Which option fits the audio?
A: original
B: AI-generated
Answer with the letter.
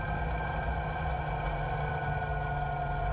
A